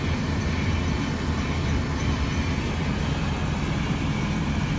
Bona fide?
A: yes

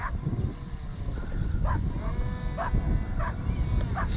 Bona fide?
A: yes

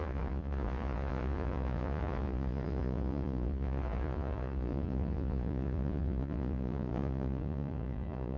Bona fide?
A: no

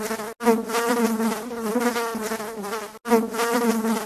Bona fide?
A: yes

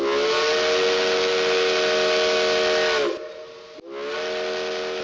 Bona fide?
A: yes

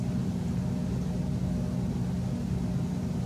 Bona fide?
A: yes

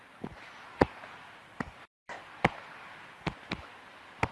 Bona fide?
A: yes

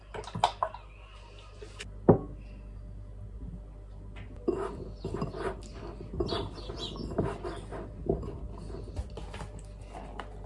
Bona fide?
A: yes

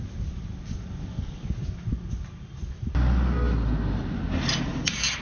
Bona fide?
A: yes